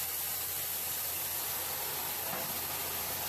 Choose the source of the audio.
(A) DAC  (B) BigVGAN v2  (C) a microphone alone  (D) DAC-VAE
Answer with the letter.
C